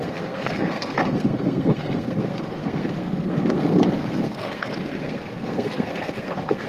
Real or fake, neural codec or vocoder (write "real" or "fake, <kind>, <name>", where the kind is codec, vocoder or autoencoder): fake, codec, SNAC